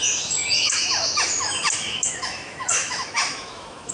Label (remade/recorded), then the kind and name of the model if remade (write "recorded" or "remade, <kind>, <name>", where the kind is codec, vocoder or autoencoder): remade, autoencoder, DAC-VAE